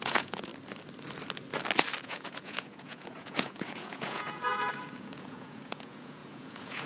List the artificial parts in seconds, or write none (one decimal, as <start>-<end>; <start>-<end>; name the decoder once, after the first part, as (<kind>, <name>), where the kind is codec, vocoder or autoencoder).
0.0-0.5 (vocoder, Vocos); 2.0-6.9